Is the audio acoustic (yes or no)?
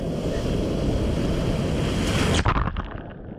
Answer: yes